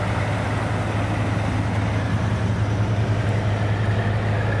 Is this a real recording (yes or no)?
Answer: yes